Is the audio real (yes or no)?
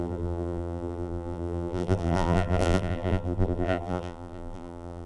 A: no